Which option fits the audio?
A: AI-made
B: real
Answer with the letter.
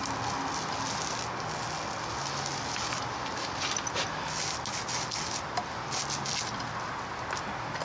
B